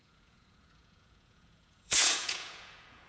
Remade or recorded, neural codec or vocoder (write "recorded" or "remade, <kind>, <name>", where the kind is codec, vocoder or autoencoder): remade, vocoder, Vocos